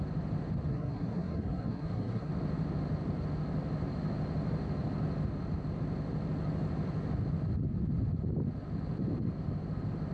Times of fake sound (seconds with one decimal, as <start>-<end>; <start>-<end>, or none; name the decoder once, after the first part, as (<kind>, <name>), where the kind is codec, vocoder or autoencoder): 0.7-2.3 (codec, SNAC)